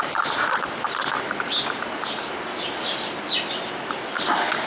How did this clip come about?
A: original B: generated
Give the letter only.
A